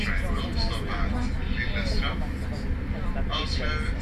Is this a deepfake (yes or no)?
no